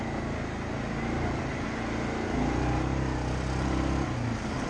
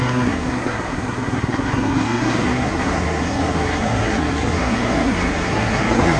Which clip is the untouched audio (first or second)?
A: first